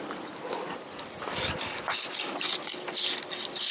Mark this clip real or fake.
real